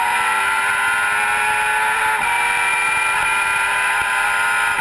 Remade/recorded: recorded